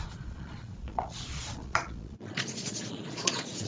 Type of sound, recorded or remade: remade